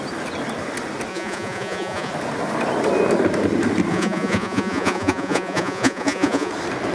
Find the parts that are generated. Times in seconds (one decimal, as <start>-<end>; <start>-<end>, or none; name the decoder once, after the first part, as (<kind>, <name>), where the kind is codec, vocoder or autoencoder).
1.1-2.1 (vocoder, Vocos); 3.9-6.5